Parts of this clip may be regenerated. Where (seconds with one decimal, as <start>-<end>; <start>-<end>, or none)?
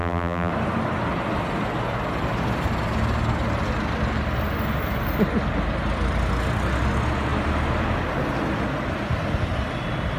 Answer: 0.0-0.5